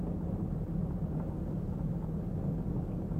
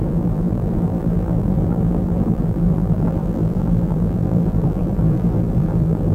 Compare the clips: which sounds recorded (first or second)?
first